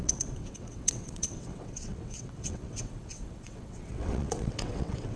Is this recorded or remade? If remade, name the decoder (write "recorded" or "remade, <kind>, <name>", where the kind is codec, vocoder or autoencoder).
remade, vocoder, WaveNeXt